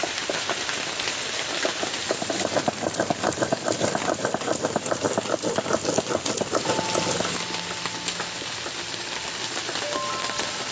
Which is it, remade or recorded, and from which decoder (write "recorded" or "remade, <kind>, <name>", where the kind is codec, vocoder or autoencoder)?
recorded